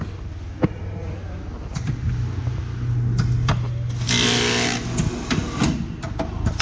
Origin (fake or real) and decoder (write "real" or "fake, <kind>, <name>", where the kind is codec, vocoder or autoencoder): real